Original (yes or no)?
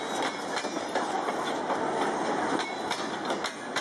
yes